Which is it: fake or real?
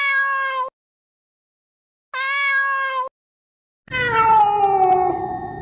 real